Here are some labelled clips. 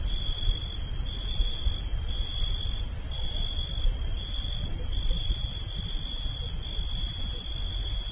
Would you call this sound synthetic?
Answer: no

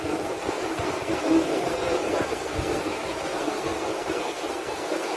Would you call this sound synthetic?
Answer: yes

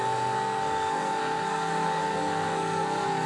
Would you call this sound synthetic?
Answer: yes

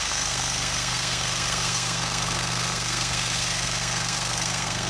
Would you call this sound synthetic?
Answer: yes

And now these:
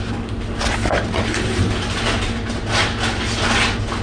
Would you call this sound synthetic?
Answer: no